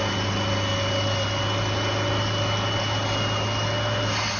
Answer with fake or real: real